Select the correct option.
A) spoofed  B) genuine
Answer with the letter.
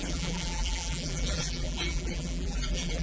A